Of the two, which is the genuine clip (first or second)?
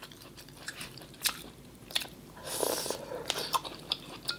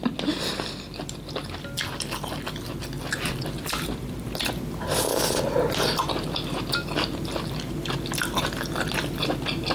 second